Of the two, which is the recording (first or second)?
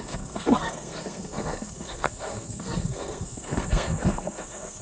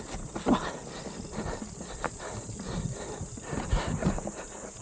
second